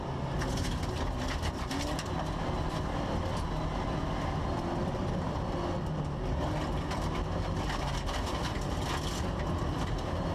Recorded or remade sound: recorded